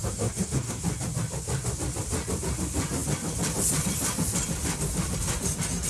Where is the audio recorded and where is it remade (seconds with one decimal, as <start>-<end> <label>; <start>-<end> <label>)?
0.0-0.8 remade; 0.8-5.9 recorded